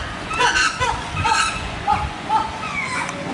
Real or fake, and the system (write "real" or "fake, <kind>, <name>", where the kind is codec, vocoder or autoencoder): fake, vocoder, Vocos